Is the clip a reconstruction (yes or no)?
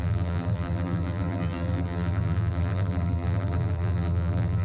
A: yes